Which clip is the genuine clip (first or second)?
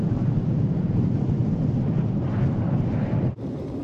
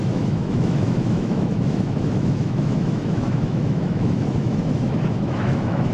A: first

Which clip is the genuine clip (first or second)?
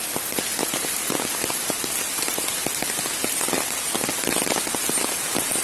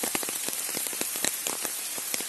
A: first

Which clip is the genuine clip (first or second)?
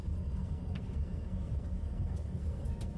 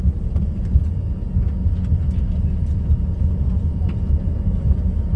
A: second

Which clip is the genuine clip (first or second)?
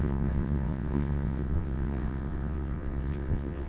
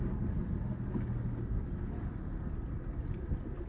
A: second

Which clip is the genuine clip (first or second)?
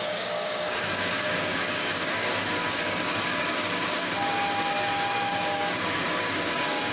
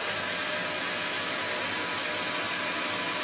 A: second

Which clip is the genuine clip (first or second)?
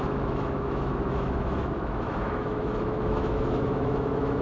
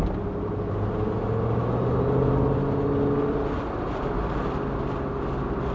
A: second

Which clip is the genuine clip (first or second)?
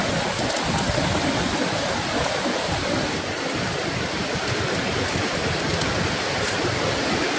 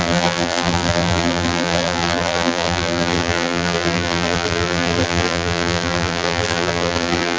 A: first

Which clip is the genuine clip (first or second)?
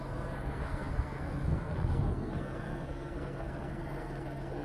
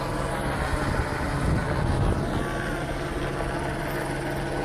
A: second